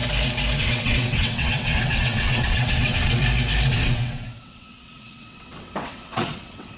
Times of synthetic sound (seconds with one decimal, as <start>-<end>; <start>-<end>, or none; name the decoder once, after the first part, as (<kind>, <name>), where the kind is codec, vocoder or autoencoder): 0.6-3.2 (vocoder, WaveNeXt); 3.7-6.8